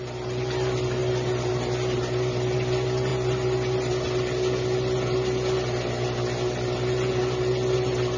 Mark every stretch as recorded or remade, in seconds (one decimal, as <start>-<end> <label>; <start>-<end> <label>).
0.0-8.2 recorded